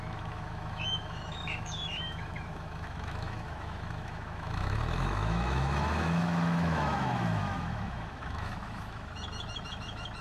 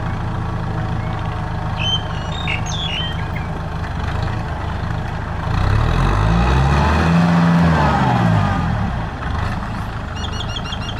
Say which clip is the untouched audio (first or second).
second